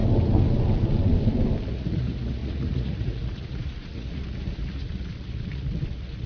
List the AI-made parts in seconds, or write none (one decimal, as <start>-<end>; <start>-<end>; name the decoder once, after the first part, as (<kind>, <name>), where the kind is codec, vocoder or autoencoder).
1.7-6.3 (vocoder, Vocos)